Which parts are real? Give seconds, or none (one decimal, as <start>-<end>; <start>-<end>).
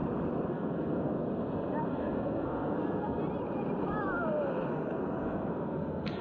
0.0-0.5; 1.1-1.9; 3.2-4.7